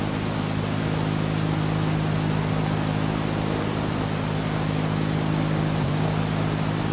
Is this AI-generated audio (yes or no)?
no